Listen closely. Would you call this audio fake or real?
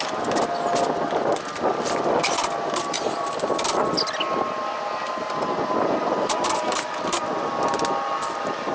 real